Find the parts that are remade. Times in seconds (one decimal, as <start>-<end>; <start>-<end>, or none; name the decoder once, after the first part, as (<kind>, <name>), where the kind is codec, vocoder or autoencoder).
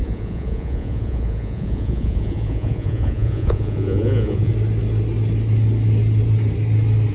0.0-4.5 (vocoder, Vocos)